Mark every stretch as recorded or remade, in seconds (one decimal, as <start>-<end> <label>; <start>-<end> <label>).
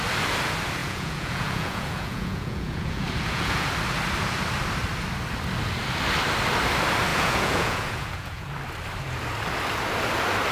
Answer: 0.0-0.8 recorded; 0.8-3.7 remade; 3.7-7.1 recorded; 7.1-8.5 remade; 8.5-10.5 recorded